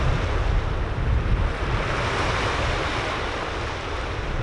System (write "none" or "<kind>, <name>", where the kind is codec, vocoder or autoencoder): none